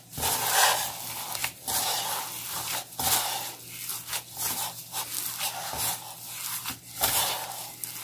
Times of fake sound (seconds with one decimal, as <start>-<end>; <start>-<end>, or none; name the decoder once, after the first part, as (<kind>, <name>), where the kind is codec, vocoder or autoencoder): none